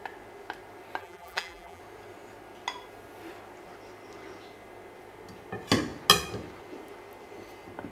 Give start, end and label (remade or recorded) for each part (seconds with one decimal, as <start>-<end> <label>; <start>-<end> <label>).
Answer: 0.0-1.0 recorded; 1.0-1.8 remade; 1.8-7.9 recorded